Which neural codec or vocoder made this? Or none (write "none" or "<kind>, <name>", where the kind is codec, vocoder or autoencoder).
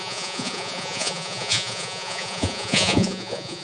vocoder, Vocos